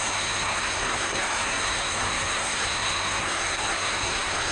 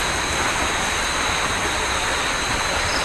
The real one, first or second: second